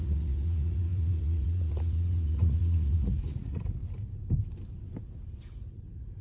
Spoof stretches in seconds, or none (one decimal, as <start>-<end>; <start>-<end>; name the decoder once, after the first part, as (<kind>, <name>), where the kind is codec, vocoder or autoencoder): 0.0-3.8 (vocoder, Vocos); 5.5-6.2